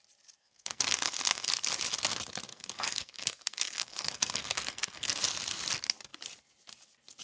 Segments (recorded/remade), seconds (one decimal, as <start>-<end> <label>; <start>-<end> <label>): 0.0-0.4 recorded; 0.4-1.5 remade; 1.5-2.5 recorded; 2.5-5.2 remade; 5.2-7.2 recorded